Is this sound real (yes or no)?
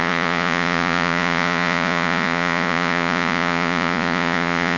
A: no